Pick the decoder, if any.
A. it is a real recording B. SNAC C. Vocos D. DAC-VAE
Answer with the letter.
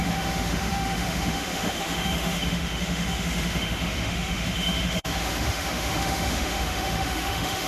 D